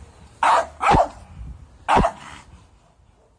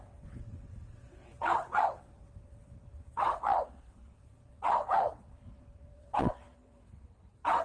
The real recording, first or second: first